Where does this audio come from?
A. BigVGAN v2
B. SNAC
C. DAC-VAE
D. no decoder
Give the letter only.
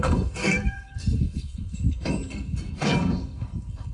B